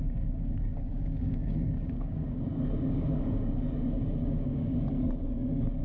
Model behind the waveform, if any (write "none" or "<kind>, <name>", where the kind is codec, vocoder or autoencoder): codec, DAC